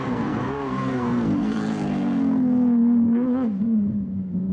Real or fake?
fake